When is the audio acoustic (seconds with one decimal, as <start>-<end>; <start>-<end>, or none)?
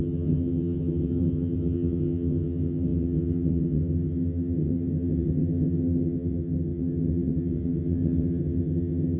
none